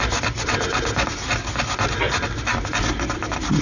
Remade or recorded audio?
recorded